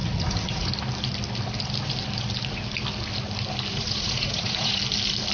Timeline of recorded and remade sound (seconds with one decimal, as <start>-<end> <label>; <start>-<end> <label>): 0.0-0.7 remade; 0.7-3.7 recorded; 3.7-4.8 remade; 4.8-5.3 recorded